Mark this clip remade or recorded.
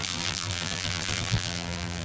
remade